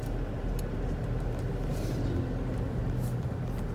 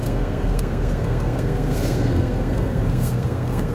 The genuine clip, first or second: first